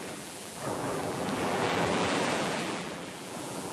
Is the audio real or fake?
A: fake